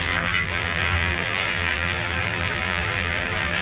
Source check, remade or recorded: remade